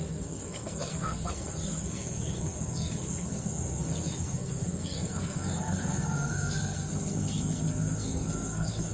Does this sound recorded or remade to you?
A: remade